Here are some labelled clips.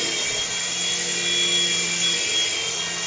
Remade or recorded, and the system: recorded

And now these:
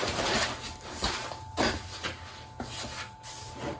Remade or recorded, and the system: recorded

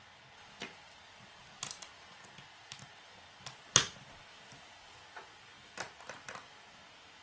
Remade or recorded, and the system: recorded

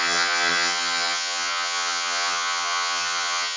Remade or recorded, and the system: remade, vocoder, HiFi-GAN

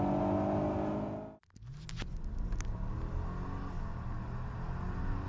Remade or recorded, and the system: recorded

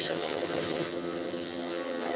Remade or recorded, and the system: remade, vocoder, HiFi-GAN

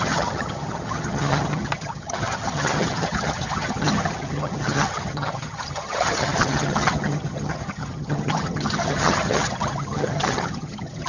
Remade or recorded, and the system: remade, vocoder, HiFi-GAN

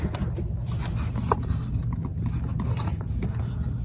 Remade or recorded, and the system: recorded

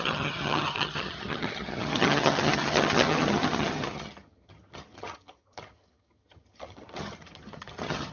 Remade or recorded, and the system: remade, vocoder, HiFi-GAN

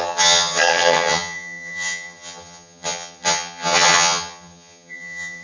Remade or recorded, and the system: remade, vocoder, HiFi-GAN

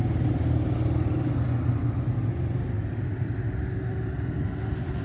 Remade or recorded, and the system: recorded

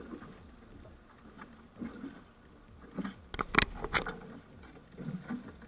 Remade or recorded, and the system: recorded